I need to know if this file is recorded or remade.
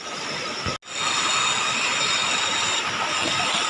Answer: recorded